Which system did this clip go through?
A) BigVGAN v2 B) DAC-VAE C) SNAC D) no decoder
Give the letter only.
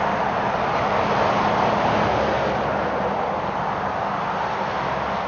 D